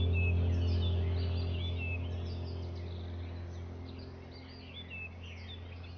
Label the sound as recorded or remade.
recorded